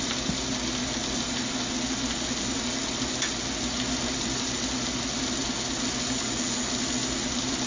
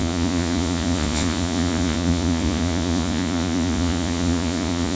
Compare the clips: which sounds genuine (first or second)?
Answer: first